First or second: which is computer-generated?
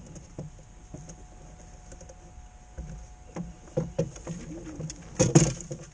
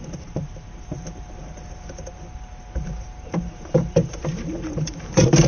second